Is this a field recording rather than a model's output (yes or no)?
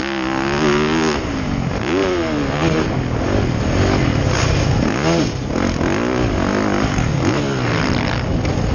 yes